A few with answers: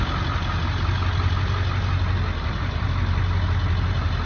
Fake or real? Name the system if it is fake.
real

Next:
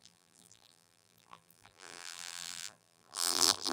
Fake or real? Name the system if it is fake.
fake, vocoder, BigVGAN v2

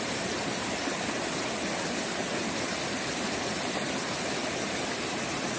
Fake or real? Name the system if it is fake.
real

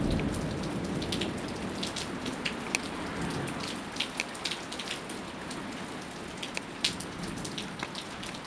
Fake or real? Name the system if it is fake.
real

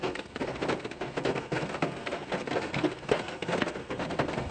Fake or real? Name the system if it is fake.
fake, codec, SNAC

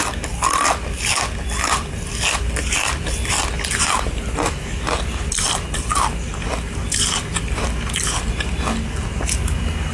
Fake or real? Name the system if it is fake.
real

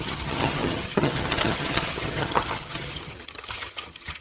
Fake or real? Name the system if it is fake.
fake, vocoder, HiFi-GAN